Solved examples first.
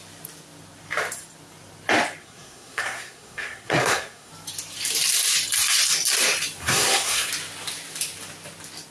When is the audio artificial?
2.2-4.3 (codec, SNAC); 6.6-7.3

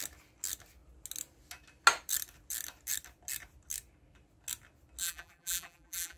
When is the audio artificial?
5.0-6.2 (vocoder, BigVGAN v2)

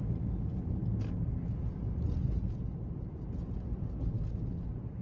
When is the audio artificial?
none